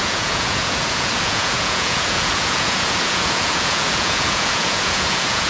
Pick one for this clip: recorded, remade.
remade